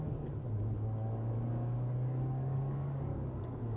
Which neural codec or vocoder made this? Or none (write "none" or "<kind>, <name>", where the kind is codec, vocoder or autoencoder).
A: codec, DAC